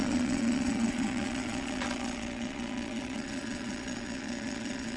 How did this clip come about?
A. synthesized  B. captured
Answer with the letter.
A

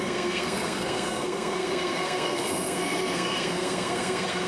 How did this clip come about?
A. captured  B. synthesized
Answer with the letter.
B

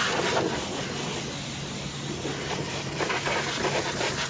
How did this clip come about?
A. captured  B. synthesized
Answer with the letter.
A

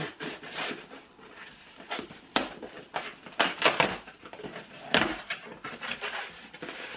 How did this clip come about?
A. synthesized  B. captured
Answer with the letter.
B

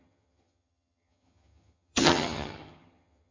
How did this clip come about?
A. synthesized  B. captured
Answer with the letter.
A